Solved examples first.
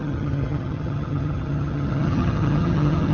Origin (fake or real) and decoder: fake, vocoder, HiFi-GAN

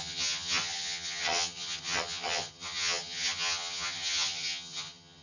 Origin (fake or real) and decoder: fake, vocoder, HiFi-GAN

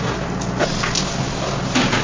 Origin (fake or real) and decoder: real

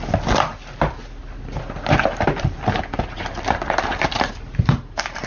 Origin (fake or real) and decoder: real